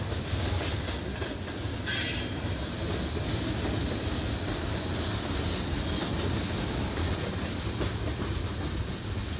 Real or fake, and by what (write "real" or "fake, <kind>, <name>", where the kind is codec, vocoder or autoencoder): real